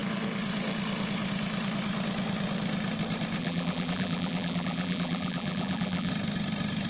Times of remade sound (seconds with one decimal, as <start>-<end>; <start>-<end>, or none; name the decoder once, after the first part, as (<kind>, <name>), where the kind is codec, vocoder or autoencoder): 3.4-6.1 (vocoder, BigVGAN v2)